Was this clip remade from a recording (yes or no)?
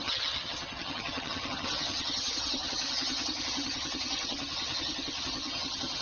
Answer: yes